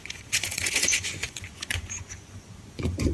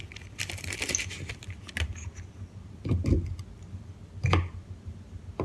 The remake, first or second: first